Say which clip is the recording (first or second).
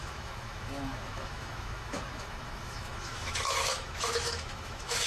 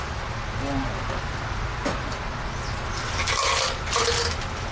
second